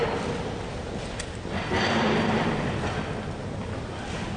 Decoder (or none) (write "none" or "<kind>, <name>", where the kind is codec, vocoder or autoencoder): none